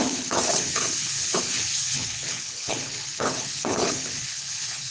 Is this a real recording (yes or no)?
no